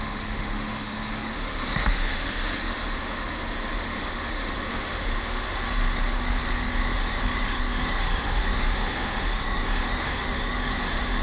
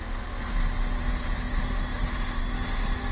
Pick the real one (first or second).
second